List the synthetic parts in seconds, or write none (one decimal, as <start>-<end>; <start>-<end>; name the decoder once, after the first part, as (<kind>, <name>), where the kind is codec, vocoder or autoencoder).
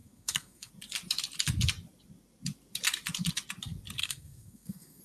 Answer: 0.0-0.7 (codec, SNAC); 4.0-5.0